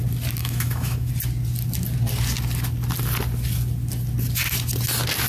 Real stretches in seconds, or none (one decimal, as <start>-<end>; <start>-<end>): 0.0-0.4; 1.1-5.3